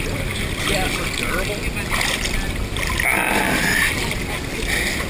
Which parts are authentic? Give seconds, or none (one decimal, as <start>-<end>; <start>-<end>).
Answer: 0.0-5.1